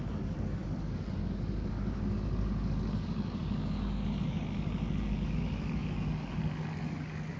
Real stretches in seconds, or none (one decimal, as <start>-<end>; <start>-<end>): none